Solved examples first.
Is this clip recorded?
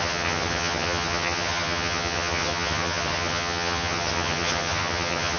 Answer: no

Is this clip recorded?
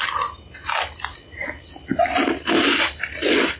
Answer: yes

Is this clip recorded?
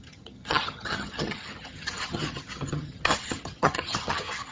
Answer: no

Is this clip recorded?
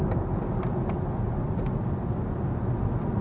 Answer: yes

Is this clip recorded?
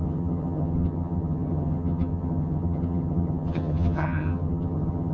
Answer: no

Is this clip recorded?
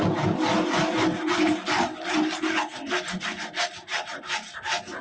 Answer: yes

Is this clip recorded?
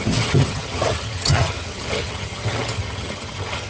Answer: no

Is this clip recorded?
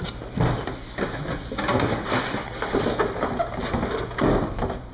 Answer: yes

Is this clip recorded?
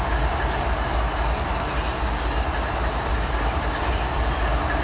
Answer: yes